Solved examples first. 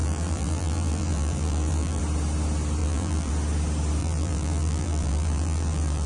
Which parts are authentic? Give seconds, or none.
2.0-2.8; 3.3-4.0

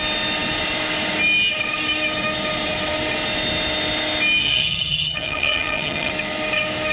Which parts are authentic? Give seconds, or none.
0.0-4.4; 6.1-6.9

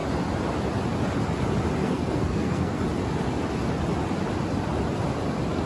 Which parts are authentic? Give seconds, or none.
0.0-1.8; 2.8-5.7

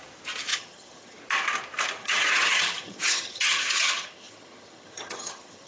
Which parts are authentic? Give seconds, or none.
0.0-0.5; 1.2-2.0